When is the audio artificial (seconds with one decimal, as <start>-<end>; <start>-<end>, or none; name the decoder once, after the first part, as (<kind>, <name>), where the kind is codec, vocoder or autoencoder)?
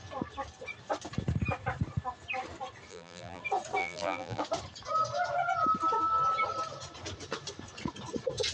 2.9-3.4 (vocoder, BigVGAN v2); 3.8-4.4